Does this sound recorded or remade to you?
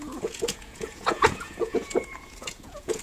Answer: remade